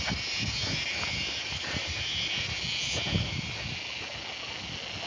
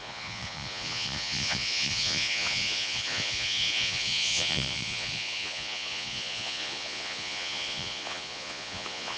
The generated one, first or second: second